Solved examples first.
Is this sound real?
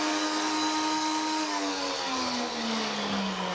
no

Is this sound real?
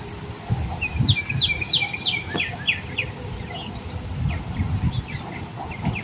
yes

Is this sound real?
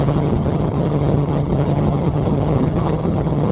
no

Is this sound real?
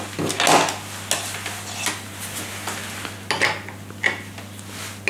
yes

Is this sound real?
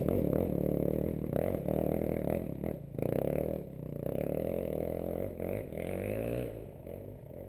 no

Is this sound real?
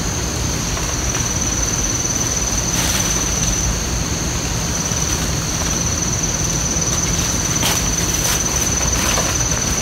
yes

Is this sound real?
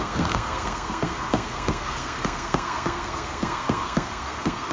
no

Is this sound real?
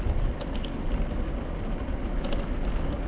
yes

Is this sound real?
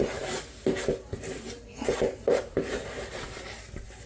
yes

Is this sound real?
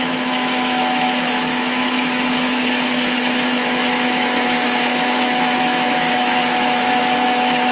no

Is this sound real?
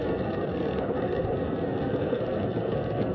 no